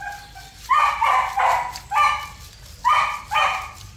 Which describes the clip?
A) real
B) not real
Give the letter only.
A